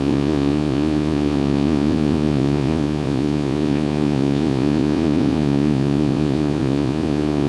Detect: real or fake fake